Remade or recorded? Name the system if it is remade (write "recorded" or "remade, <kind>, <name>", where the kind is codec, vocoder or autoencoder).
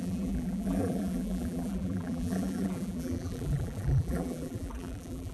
remade, vocoder, BigVGAN v2